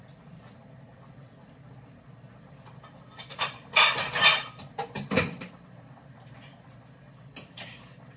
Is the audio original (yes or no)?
yes